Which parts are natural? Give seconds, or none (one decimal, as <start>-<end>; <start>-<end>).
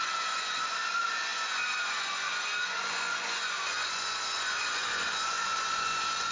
none